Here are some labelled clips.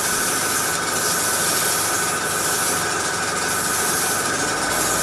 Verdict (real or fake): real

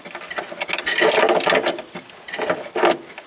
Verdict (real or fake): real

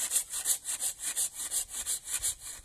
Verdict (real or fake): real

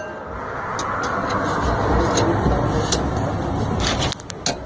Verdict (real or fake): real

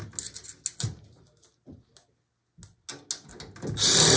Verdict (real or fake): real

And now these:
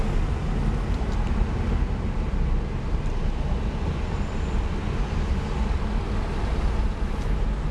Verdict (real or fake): real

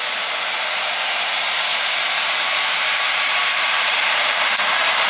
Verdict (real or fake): fake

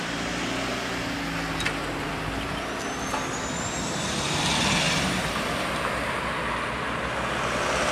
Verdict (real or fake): real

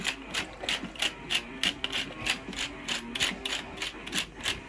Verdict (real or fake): real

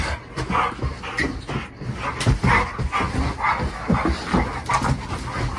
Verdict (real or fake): real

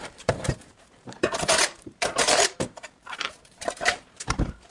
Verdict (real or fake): fake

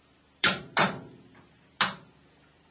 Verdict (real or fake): fake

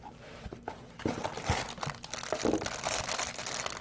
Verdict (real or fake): real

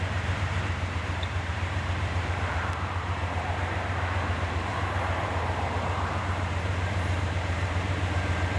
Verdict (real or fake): fake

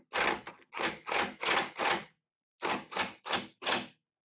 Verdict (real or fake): real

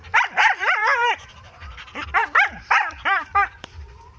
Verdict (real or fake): fake